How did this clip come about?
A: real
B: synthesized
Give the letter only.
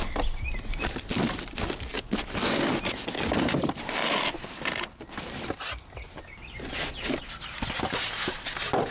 A